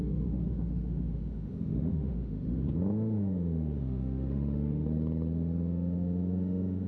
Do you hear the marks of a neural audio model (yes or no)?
yes